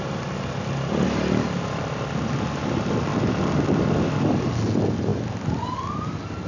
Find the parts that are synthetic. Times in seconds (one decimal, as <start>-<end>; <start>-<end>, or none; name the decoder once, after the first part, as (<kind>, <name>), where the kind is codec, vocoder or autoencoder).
none